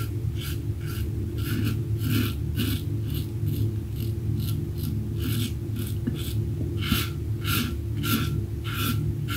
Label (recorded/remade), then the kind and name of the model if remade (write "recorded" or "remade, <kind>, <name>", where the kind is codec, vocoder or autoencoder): recorded